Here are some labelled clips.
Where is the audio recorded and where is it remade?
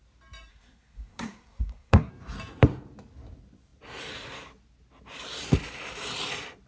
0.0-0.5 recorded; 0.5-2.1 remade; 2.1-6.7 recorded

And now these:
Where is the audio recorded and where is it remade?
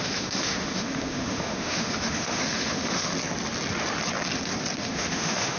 0.0-3.1 remade; 3.1-4.8 recorded; 4.8-5.6 remade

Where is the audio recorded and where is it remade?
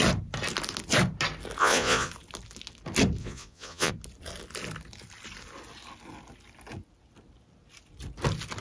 0.0-1.6 recorded; 1.6-2.1 remade; 2.1-3.2 recorded; 3.2-3.9 remade; 3.9-8.6 recorded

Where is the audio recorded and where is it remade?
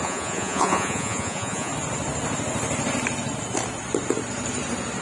0.0-1.7 remade; 1.7-5.0 recorded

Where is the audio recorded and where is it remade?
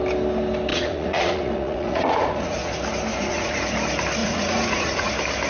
0.0-0.7 recorded; 0.7-2.7 remade; 2.7-3.1 recorded; 3.1-3.7 remade; 3.7-4.2 recorded; 4.2-5.1 remade; 5.1-5.5 recorded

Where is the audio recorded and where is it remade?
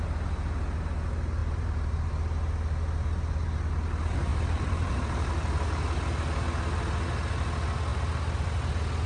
0.0-1.4 recorded; 1.4-2.1 remade; 2.1-4.3 recorded; 4.3-5.3 remade; 5.3-9.1 recorded